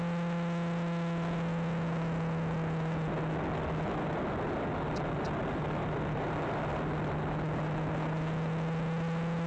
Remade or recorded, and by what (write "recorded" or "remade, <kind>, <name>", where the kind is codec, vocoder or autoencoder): recorded